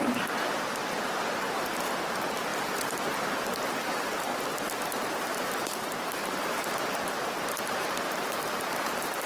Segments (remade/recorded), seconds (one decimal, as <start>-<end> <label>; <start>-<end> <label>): 0.0-2.5 recorded; 2.5-4.4 remade; 4.4-5.3 recorded; 5.3-9.3 remade